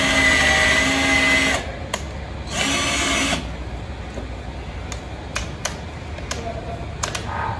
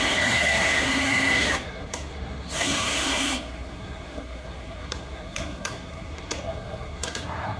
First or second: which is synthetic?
second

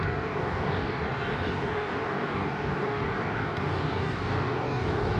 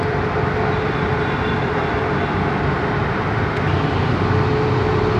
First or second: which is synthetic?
first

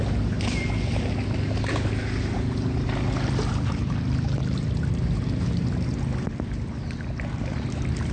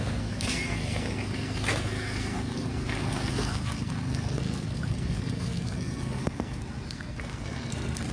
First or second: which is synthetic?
second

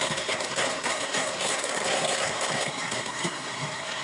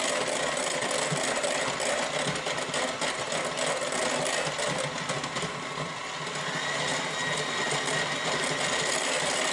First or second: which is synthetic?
first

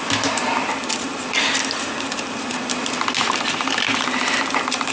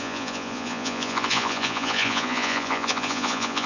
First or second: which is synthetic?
second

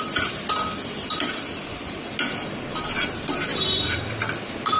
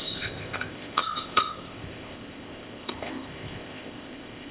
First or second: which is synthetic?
second